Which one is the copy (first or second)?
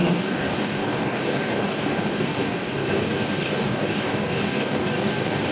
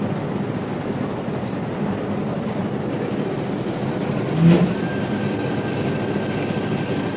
first